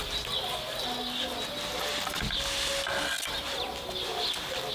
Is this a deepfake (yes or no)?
no